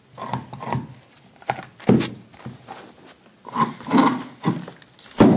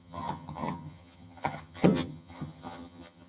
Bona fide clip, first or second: first